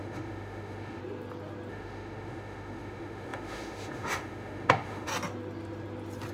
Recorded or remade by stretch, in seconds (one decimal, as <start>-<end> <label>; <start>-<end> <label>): 0.0-1.0 remade; 1.0-1.7 recorded; 1.7-5.1 remade; 5.1-6.3 recorded